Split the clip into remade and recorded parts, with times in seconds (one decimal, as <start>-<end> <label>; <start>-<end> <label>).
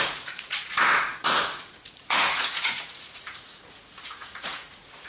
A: 0.0-5.1 remade